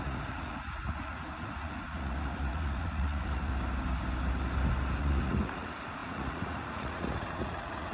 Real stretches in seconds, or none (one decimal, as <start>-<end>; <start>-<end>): 3.5-5.0